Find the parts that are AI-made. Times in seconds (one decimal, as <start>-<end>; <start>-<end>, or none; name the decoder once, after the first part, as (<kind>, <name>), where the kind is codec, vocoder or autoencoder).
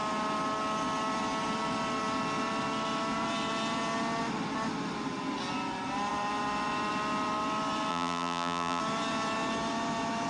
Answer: 7.9-8.8 (vocoder, BigVGAN v2)